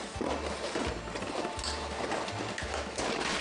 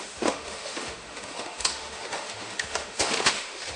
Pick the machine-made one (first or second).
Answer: second